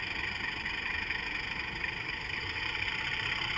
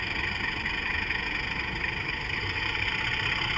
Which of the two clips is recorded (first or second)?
second